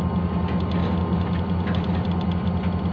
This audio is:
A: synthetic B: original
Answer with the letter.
B